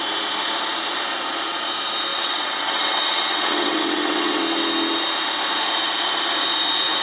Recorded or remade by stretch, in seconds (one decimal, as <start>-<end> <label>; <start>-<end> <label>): 0.0-2.1 recorded; 2.1-4.4 remade; 4.4-7.0 recorded

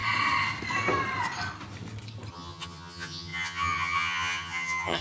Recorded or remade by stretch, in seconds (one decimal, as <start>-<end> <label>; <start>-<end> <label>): 0.0-2.3 recorded; 2.3-5.0 remade

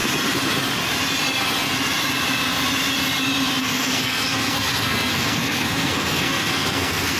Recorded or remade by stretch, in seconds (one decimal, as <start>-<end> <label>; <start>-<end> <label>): 0.0-3.6 recorded; 3.6-7.2 remade

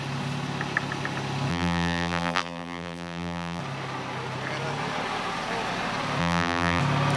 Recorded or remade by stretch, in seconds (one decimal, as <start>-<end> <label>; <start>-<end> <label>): 0.0-1.5 recorded; 1.5-3.6 remade; 3.6-6.2 recorded; 6.2-6.8 remade; 6.8-7.2 recorded

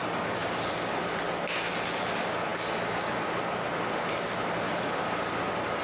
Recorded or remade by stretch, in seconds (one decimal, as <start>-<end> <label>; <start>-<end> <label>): 0.0-5.8 recorded